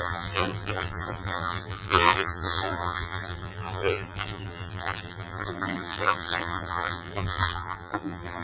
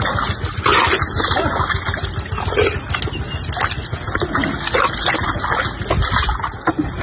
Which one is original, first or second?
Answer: second